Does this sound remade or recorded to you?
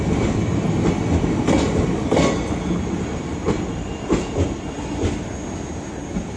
recorded